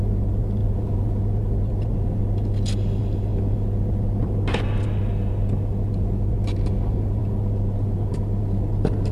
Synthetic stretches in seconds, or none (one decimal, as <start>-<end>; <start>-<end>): 0.6-1.2